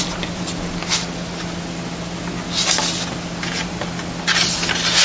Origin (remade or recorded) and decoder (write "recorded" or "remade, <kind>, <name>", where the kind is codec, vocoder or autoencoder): recorded